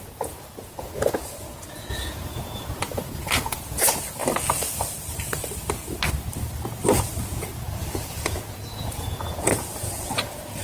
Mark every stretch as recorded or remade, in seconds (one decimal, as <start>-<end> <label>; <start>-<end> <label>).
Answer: 0.0-4.2 remade; 4.2-6.9 recorded; 6.9-10.6 remade